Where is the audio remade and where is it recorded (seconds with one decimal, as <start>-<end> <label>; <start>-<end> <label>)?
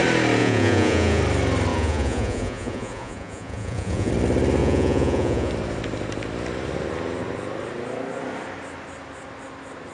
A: 0.0-0.4 recorded; 0.4-1.2 remade; 1.2-1.7 recorded; 1.7-4.1 remade; 4.1-4.6 recorded; 4.6-5.5 remade; 5.5-9.9 recorded